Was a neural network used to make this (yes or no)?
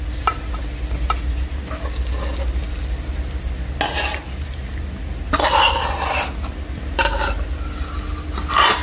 no